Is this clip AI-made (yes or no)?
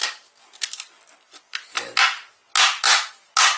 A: no